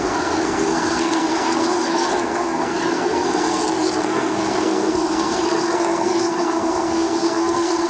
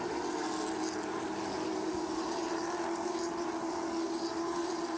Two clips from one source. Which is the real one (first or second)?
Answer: second